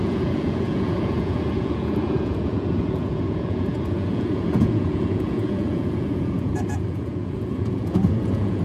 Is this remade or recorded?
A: remade